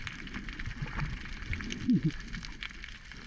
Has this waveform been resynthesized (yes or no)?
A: no